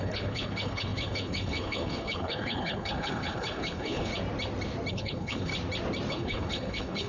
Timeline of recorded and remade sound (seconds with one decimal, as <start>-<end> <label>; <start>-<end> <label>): 0.0-4.1 remade; 4.1-4.9 recorded; 4.9-5.5 remade; 5.5-6.1 recorded; 6.1-7.1 remade

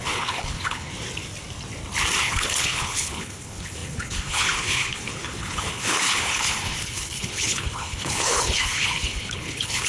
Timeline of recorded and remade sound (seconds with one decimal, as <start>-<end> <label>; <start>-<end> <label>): 0.0-0.9 remade; 0.9-2.2 recorded; 2.2-9.9 remade

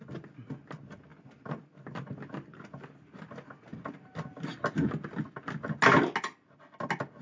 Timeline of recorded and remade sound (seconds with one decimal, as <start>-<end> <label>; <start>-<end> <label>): 0.0-7.2 recorded

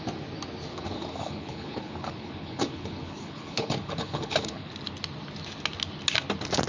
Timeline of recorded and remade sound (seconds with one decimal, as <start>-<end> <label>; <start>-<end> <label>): 0.0-0.7 recorded; 0.7-4.7 remade; 4.7-6.7 recorded

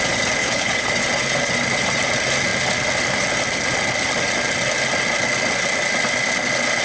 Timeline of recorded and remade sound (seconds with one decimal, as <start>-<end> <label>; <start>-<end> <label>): 0.0-0.4 recorded; 0.4-0.9 remade; 0.9-6.8 recorded

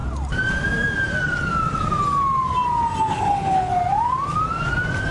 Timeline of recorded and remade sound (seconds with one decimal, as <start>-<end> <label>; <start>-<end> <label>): 0.0-3.1 recorded; 3.1-3.7 remade; 3.7-5.1 recorded